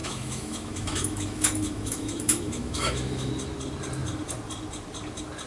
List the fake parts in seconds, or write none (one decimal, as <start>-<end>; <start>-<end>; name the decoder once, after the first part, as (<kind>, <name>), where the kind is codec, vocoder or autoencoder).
0.0-3.3 (autoencoder, DAC-VAE)

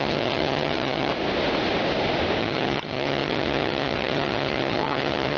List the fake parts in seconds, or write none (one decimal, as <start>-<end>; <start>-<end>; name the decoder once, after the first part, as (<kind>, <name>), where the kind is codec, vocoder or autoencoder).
0.0-1.1 (vocoder, HiFi-GAN); 2.4-5.4